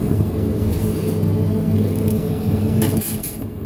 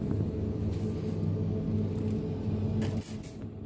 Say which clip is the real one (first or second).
second